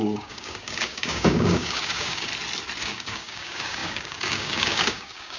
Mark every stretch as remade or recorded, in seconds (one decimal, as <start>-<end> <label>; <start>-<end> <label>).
0.0-2.3 remade; 2.3-2.8 recorded; 2.8-5.4 remade